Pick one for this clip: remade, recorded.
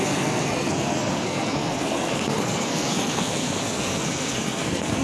remade